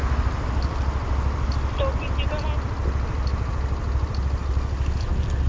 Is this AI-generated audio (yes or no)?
no